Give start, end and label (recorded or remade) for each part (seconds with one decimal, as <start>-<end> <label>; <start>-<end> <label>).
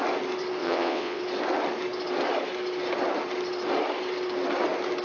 0.0-0.6 recorded; 0.6-1.2 remade; 1.2-5.0 recorded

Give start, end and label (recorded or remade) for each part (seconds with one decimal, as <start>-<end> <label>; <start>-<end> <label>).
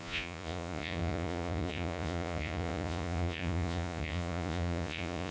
0.0-5.3 remade